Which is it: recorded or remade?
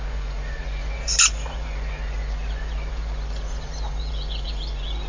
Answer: remade